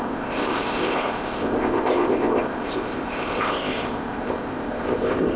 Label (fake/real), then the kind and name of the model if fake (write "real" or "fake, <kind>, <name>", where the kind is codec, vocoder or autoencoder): fake, codec, ZipCodec